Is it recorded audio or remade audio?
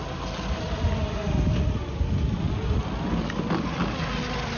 recorded